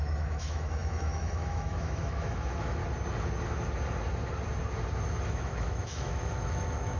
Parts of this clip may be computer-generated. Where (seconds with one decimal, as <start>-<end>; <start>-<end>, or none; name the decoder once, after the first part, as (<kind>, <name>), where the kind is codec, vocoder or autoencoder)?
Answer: 0.0-2.8 (autoencoder, DAC-VAE); 5.3-7.0